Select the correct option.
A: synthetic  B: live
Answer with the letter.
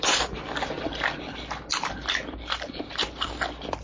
B